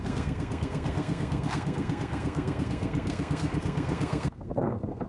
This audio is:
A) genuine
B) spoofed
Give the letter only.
B